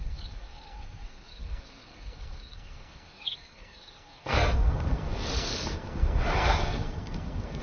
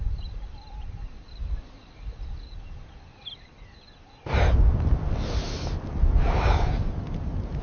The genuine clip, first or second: second